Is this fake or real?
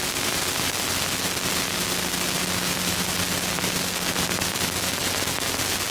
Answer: real